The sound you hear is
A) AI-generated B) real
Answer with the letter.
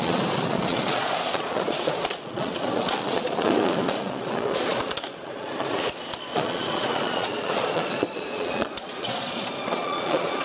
A